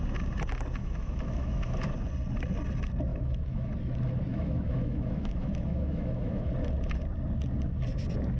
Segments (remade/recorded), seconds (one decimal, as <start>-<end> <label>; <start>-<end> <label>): 0.0-0.8 recorded; 0.8-1.9 remade; 1.9-3.1 recorded; 3.1-3.7 remade; 3.7-4.3 recorded; 4.3-6.5 remade; 6.5-8.4 recorded